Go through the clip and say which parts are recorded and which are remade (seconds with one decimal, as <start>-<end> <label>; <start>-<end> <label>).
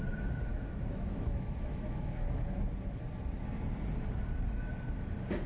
0.0-0.5 recorded; 0.5-2.7 remade; 2.7-5.5 recorded